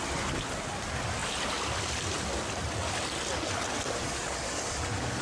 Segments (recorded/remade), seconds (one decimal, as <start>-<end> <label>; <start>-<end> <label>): 0.0-5.2 remade